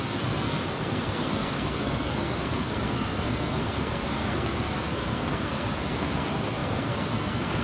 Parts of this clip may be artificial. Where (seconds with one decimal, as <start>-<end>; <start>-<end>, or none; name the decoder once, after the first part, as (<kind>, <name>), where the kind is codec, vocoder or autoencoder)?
0.0-7.6 (codec, SNAC)